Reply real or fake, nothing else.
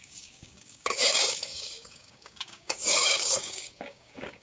fake